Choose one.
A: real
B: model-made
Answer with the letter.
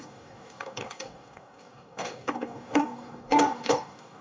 B